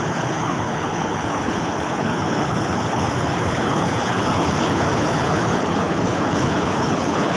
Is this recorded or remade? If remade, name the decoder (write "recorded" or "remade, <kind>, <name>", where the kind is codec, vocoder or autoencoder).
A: remade, codec, HILCodec